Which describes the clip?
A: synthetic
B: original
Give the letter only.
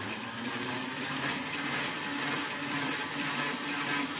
B